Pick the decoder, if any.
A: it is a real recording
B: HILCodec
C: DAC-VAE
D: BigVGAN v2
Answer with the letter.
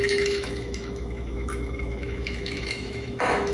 C